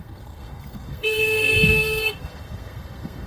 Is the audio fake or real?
fake